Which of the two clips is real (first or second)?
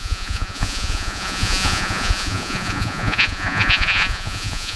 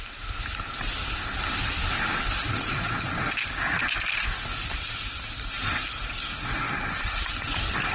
second